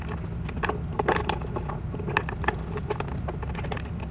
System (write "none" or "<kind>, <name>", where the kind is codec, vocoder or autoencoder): none